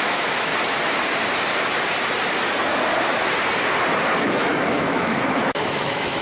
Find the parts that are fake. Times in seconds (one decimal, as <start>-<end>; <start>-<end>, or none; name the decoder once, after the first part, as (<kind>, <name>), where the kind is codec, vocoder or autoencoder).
0.0-0.5 (autoencoder, DAC-VAE); 4.2-6.2